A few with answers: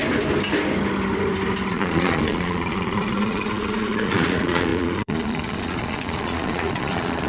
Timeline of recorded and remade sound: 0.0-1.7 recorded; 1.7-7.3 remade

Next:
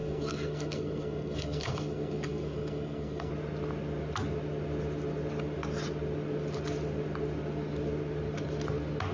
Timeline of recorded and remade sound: 0.0-3.3 remade; 3.3-9.1 recorded

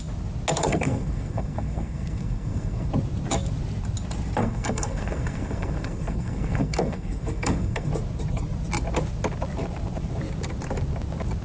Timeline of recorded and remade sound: 0.0-0.6 recorded; 0.6-2.9 remade; 2.9-4.4 recorded; 4.4-7.9 remade; 7.9-11.4 recorded

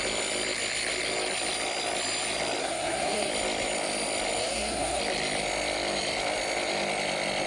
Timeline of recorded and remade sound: 0.0-2.6 recorded; 2.6-3.3 remade; 3.3-4.4 recorded; 4.4-5.0 remade; 5.0-7.5 recorded

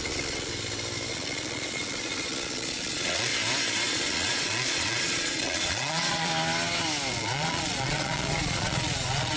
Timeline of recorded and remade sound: 0.0-0.5 remade; 0.5-1.1 recorded; 1.1-3.3 remade; 3.3-3.9 recorded; 3.9-6.3 remade; 6.3-7.1 recorded; 7.1-9.4 remade

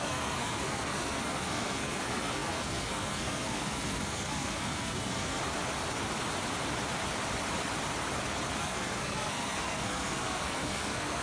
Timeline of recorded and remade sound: 0.0-5.4 remade; 5.4-8.6 recorded; 8.6-11.2 remade

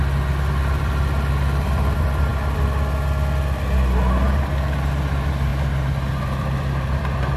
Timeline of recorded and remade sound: 0.0-2.3 remade; 2.3-4.4 recorded; 4.4-5.5 remade; 5.5-6.2 recorded; 6.2-7.4 remade